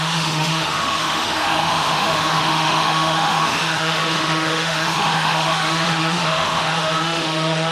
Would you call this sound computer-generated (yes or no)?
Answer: yes